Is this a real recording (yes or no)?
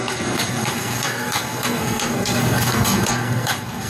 no